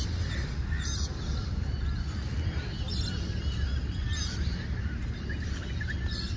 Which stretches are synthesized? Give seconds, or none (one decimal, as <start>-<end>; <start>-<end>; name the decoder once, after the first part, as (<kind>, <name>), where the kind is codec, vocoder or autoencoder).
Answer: none